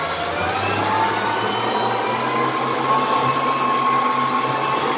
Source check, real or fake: real